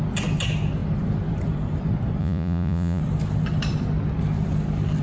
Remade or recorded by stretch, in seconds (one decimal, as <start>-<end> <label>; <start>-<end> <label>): 0.0-2.2 recorded; 2.2-3.0 remade; 3.0-5.0 recorded